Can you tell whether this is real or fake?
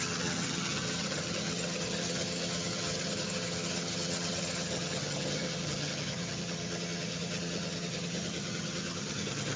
fake